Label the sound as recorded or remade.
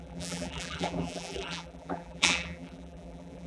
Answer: remade